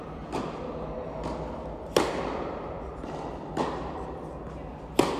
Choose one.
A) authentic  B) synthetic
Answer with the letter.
A